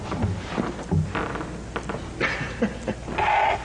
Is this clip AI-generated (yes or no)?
no